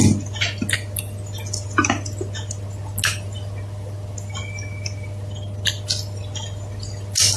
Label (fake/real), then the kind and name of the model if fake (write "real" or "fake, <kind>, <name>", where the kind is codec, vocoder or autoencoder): real